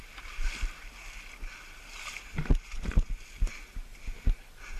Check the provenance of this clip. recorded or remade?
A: recorded